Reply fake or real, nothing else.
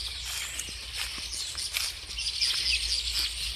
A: real